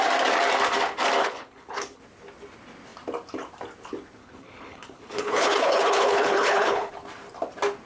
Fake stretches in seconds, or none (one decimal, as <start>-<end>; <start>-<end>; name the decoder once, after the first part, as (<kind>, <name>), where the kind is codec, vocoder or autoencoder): 1.2-2.0 (codec, HILCodec); 4.2-6.9